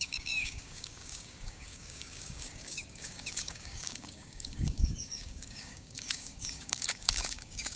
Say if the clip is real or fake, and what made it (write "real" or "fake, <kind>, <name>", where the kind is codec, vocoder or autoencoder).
fake, codec, DAC